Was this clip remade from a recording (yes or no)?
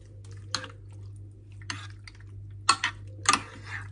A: no